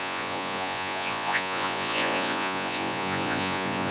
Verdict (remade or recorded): remade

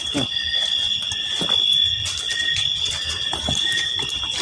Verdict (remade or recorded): recorded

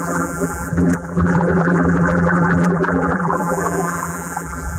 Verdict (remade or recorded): remade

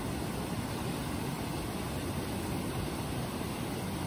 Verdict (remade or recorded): recorded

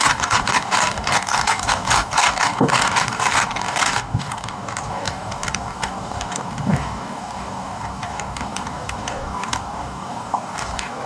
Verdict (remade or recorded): remade